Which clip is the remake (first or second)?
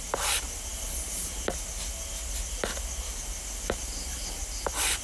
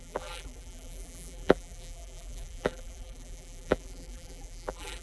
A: second